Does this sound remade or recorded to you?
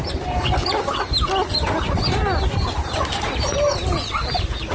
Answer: recorded